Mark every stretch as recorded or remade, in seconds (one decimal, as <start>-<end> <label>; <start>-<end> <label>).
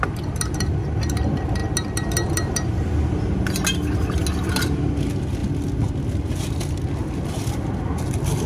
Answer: 0.0-8.5 recorded